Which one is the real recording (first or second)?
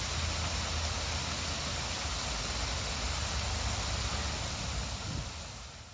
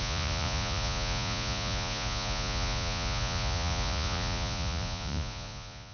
first